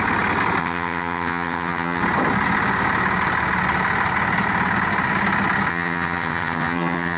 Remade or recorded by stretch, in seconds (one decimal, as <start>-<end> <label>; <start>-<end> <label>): 0.0-0.6 recorded; 0.6-2.0 remade; 2.0-5.7 recorded; 5.7-7.2 remade